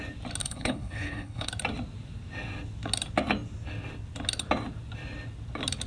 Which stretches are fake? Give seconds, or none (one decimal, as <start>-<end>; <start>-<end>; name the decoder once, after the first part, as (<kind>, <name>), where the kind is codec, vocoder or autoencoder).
0.4-1.5 (codec, HILCodec)